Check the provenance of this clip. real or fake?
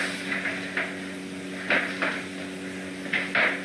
real